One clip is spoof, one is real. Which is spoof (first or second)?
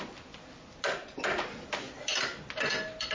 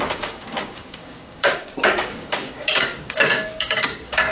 second